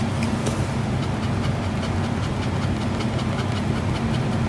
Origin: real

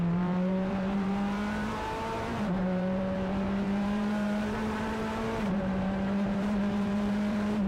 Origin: fake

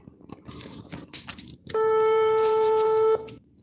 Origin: fake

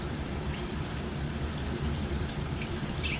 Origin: fake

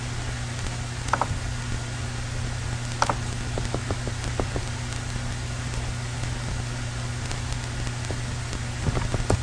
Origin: real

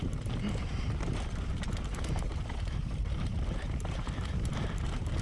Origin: fake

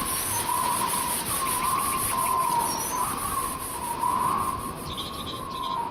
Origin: real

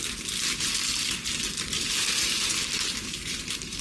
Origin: fake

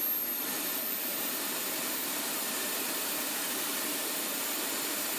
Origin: fake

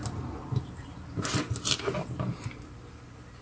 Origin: real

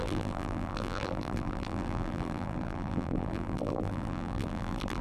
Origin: fake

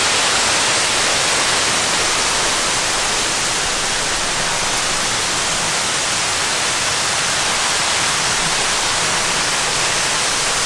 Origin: real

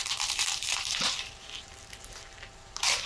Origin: fake